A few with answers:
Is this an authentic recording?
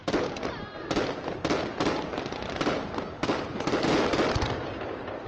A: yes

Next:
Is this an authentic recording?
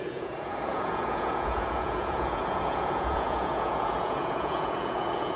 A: no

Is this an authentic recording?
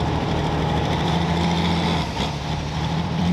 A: no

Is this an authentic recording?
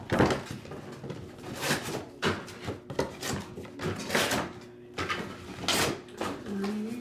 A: yes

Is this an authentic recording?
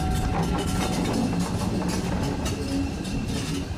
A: yes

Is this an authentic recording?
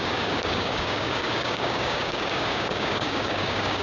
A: no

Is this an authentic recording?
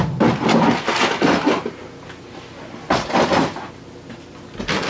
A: yes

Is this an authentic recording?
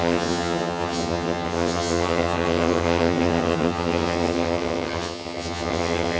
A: no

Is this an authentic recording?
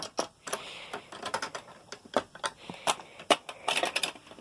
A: yes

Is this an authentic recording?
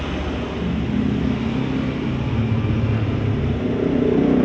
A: yes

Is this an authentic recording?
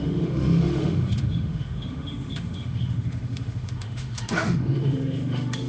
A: no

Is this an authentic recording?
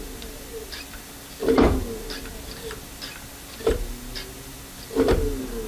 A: yes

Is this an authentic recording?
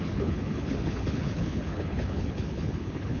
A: no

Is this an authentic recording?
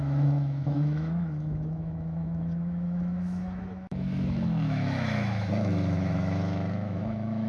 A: no